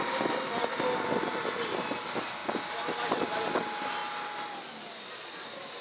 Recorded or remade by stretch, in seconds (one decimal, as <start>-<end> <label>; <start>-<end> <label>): 0.0-5.8 recorded

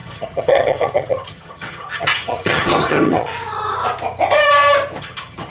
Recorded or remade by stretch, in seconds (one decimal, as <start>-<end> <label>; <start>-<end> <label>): 0.0-3.3 remade; 3.3-5.0 recorded; 5.0-5.5 remade

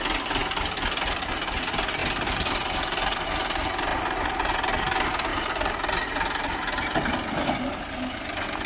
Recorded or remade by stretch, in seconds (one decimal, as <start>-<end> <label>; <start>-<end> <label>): 0.0-8.7 recorded

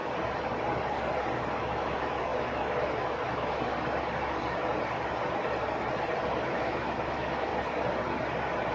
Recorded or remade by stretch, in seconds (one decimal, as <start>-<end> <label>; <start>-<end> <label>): 0.0-1.6 recorded; 1.6-3.7 remade; 3.7-6.4 recorded; 6.4-7.5 remade; 7.5-8.7 recorded